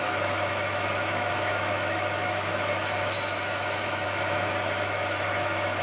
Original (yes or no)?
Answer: no